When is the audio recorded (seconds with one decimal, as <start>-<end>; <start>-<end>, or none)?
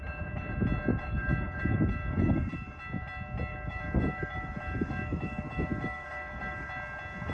0.0-0.9; 2.8-3.5; 6.7-7.3